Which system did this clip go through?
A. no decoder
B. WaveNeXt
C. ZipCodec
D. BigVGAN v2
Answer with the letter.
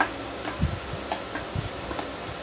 A